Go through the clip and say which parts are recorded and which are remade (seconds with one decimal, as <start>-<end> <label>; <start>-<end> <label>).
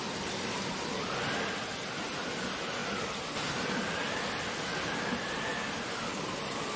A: 0.0-6.8 recorded